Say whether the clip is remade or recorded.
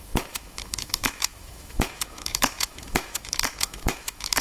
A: remade